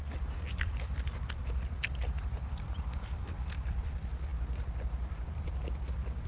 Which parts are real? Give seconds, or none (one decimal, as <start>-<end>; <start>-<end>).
3.8-6.3